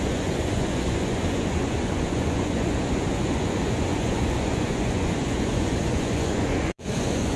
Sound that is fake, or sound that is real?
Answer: fake